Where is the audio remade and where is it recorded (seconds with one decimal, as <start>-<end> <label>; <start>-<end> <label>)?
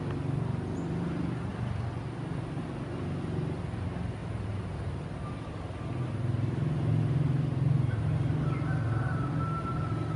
0.0-4.2 recorded; 4.2-5.6 remade; 5.6-10.2 recorded